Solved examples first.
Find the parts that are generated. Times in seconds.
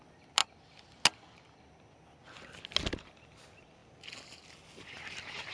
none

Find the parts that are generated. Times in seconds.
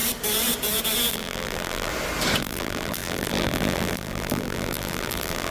1.1-1.9 (vocoder, BigVGAN v2); 2.4-5.5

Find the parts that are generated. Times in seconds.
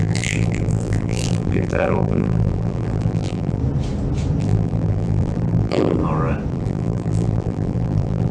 0.0-3.6 (vocoder, BigVGAN v2); 4.4-6.0; 6.5-8.3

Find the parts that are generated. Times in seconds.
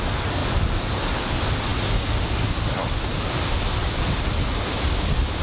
0.4-1.1 (vocoder, BigVGAN v2)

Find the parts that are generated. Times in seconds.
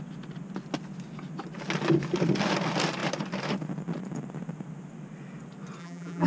5.8-6.3 (vocoder, BigVGAN v2)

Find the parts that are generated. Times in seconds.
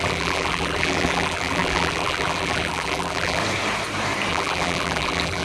0.0-3.4 (vocoder, BigVGAN v2); 4.3-5.4